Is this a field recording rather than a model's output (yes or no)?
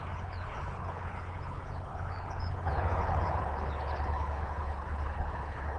no